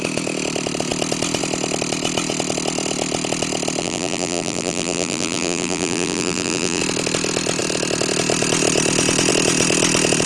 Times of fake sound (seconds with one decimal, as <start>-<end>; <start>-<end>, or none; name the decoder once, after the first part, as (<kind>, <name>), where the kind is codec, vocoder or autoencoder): 3.8-6.8 (vocoder, BigVGAN v2)